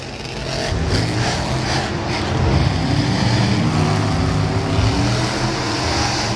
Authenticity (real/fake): real